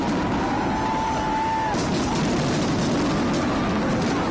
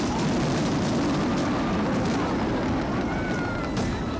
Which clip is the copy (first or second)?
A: second